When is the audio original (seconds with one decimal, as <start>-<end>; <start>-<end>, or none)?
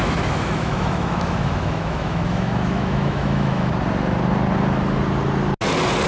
3.7-6.1